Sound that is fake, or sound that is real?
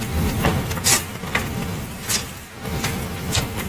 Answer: real